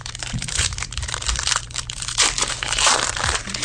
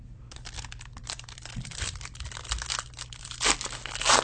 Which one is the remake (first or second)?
first